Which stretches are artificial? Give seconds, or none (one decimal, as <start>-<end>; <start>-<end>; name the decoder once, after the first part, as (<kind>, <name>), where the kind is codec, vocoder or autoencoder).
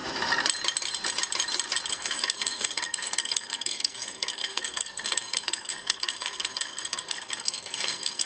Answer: 1.9-8.3 (codec, SNAC)